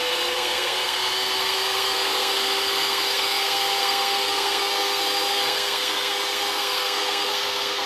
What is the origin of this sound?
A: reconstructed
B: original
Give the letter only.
A